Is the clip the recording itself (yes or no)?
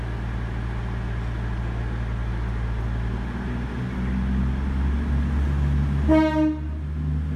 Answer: yes